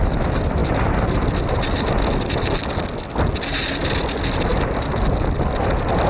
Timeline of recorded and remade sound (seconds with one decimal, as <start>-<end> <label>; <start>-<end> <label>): 0.0-6.1 recorded